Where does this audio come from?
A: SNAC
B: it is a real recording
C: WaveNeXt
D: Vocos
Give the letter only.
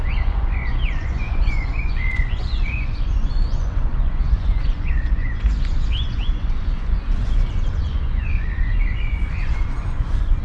D